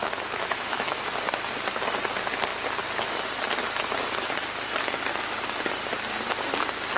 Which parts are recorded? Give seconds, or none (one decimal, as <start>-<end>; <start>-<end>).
1.0-7.0

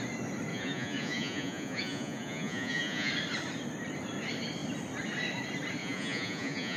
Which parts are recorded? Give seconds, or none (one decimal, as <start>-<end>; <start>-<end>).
0.0-0.5; 3.1-5.8

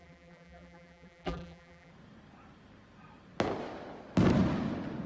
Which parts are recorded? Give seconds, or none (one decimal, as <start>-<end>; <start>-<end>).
1.9-5.1

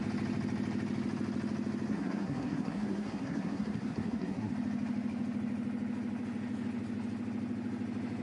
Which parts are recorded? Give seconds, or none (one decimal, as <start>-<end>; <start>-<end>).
0.0-1.9; 4.5-8.2